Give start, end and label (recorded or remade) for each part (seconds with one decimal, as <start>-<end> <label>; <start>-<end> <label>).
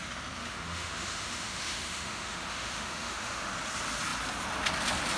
0.0-0.4 recorded; 0.4-3.5 remade; 3.5-5.2 recorded